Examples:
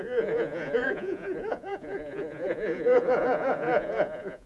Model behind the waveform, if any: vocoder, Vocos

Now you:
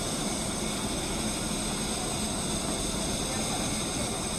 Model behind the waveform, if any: none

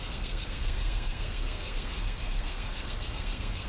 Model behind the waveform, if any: codec, SNAC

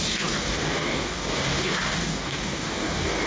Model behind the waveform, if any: codec, DAC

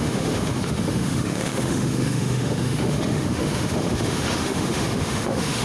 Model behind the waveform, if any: autoencoder, DAC-VAE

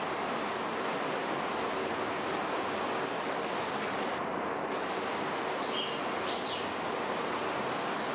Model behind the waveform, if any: none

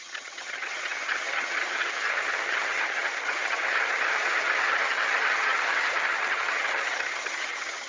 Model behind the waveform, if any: vocoder, HiFi-GAN